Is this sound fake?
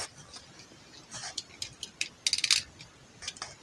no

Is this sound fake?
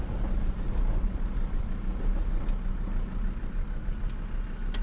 no